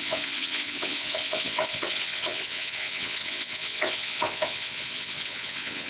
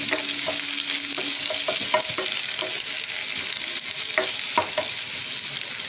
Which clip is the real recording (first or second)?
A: second